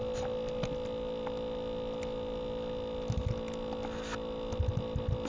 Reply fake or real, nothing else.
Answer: real